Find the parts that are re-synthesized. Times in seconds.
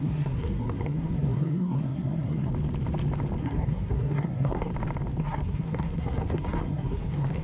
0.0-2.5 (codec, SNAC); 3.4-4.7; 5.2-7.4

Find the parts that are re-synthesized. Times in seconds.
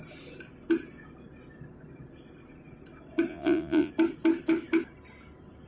3.3-3.9 (vocoder, Vocos)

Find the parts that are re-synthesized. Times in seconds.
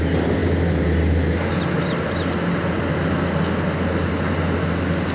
none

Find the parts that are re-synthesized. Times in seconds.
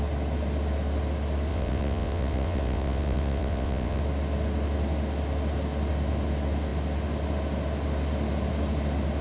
1.5-4.0 (vocoder, WaveNeXt)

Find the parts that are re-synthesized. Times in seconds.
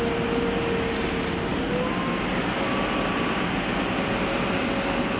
none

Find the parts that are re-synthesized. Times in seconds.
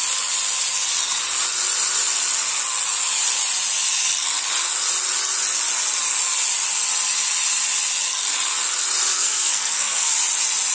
9.1-10.1 (codec, SNAC)